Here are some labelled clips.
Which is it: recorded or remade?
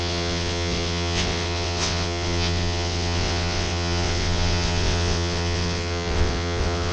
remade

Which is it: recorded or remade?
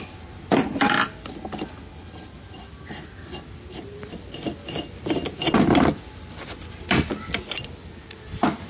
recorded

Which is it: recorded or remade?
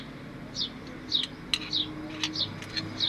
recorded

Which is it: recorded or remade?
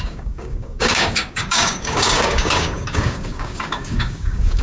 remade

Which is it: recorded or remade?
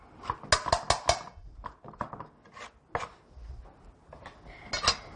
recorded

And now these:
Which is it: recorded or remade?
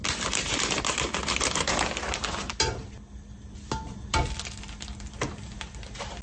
recorded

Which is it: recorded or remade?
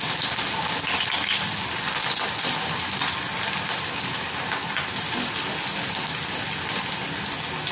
recorded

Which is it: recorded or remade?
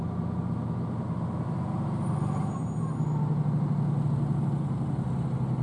recorded